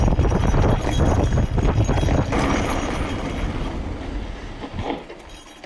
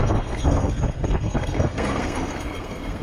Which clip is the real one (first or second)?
first